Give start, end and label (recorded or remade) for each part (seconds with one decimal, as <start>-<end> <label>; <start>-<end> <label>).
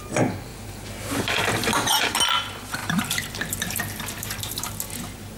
0.0-2.8 recorded; 2.8-4.8 remade; 4.8-5.4 recorded